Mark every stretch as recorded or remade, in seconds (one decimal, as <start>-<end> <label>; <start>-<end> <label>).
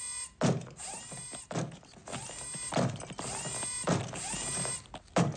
0.0-5.4 recorded